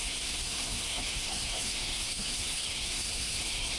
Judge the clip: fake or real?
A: fake